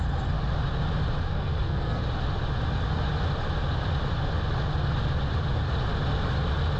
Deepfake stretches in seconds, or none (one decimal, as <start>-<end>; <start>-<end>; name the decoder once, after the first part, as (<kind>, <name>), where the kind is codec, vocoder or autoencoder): 1.3-2.0 (codec, SNAC)